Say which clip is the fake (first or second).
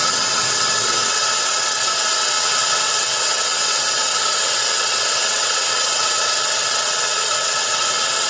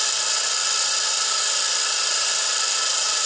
first